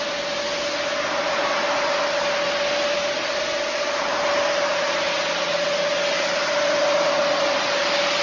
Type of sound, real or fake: real